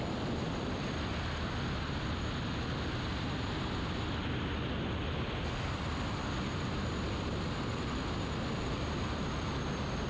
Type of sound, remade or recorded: recorded